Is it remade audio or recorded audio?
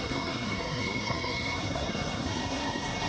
remade